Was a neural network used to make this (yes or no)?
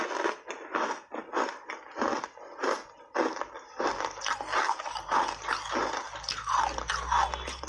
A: no